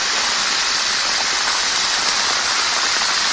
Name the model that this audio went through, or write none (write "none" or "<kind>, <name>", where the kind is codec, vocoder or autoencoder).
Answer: none